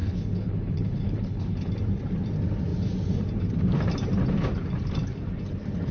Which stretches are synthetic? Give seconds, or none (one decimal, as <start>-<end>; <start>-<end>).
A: 0.0-1.7